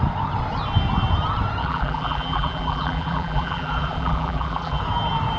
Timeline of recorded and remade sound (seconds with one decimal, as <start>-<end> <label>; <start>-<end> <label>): 0.0-1.6 recorded; 1.6-4.8 remade; 4.8-5.4 recorded